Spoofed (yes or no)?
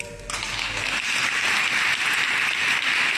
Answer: no